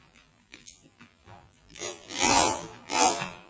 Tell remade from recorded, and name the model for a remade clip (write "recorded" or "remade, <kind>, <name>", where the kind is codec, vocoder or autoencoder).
remade, vocoder, BigVGAN v2